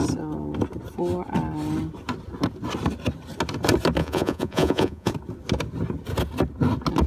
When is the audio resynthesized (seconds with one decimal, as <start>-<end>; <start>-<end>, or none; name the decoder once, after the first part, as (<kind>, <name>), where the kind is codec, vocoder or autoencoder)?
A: 4.0-5.1 (vocoder, Vocos)